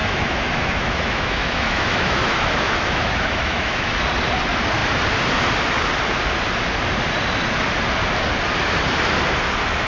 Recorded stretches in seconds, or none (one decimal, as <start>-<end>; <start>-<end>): 3.9-9.9

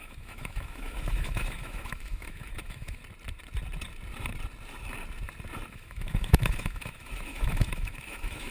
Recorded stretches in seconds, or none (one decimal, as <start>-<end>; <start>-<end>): 3.0-5.7

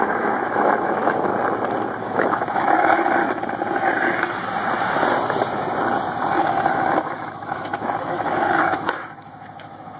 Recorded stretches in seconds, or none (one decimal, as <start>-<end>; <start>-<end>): 1.3-2.0; 3.2-6.4

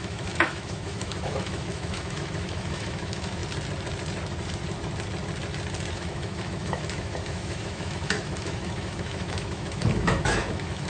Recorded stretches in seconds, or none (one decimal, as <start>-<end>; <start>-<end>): 3.4-5.9

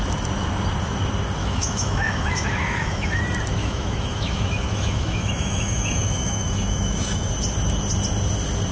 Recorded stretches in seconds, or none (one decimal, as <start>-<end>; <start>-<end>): 0.0-1.4; 3.2-3.6; 7.3-8.7

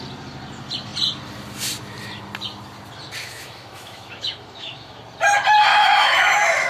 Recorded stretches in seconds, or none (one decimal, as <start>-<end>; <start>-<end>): 0.0-3.2; 5.0-5.7

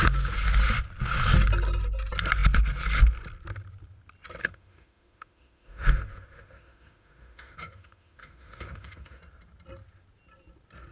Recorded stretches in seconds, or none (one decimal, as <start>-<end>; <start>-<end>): 0.0-4.4; 9.2-10.9